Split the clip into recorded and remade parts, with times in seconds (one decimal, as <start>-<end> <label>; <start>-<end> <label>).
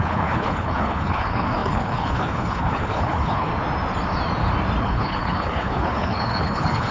0.0-3.5 remade; 3.5-4.8 recorded; 4.8-6.9 remade